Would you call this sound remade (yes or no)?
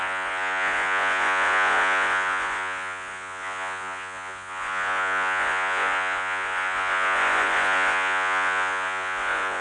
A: yes